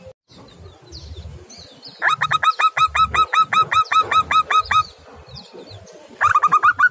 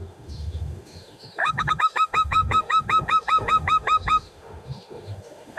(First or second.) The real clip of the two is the first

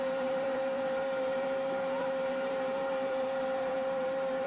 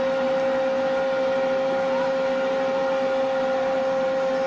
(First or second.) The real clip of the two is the second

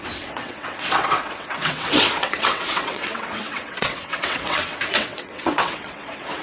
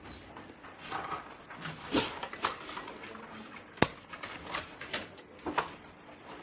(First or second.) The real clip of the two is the second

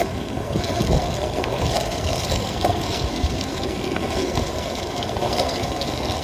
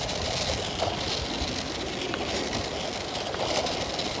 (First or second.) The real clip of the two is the second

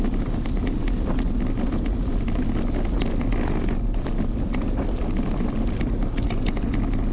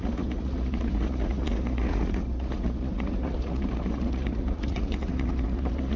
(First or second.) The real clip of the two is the first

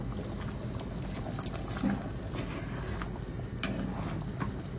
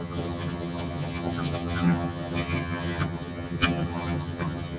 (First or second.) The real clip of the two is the first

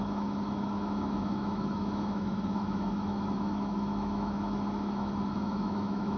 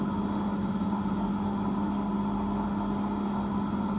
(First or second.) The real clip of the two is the second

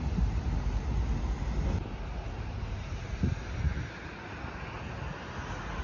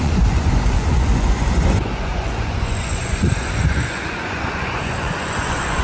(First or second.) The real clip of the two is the first